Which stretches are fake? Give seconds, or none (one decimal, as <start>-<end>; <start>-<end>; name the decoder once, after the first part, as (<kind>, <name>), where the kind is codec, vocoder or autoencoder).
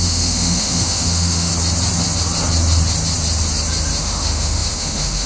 0.0-1.5 (autoencoder, DAC-VAE); 4.0-5.3